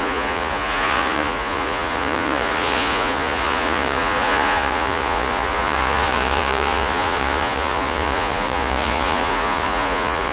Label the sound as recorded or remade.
remade